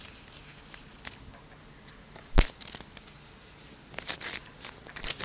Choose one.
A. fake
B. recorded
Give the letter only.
B